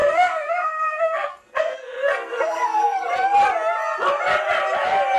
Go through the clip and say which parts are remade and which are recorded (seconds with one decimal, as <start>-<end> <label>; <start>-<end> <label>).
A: 0.0-3.1 remade; 3.1-5.2 recorded